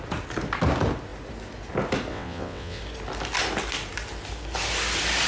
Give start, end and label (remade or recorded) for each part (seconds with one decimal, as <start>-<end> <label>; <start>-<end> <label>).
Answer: 0.0-2.1 recorded; 2.1-2.8 remade; 2.8-5.3 recorded